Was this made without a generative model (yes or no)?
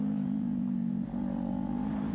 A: no